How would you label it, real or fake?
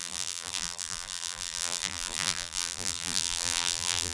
fake